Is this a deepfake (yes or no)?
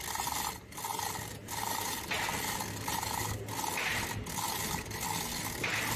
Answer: no